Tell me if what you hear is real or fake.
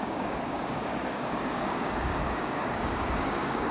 fake